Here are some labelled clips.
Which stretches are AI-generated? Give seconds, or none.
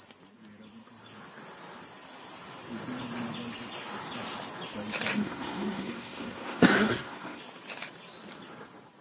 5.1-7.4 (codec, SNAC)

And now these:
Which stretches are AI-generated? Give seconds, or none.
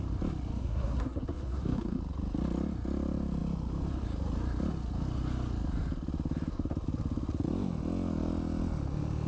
0.6-2.0 (codec, SNAC)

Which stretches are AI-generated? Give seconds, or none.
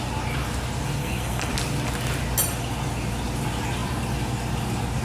1.0-1.5 (codec, SNAC)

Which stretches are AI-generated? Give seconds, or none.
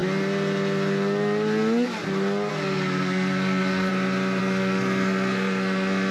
2.5-3.9 (codec, SNAC); 4.4-6.1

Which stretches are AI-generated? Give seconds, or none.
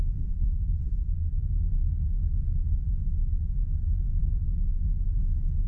4.2-5.2 (codec, SNAC)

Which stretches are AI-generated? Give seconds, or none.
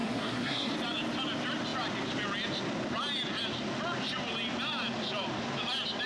0.0-0.7 (codec, SNAC)